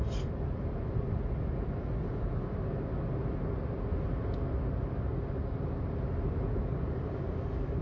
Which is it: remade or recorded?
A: recorded